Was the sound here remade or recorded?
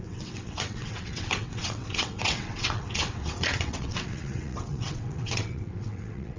remade